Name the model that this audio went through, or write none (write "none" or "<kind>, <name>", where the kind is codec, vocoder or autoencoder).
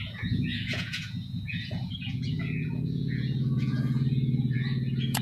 vocoder, Vocos